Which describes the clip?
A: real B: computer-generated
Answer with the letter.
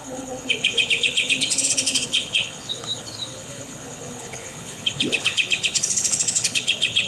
B